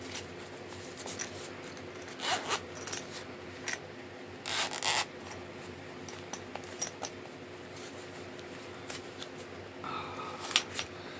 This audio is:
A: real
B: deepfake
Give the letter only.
A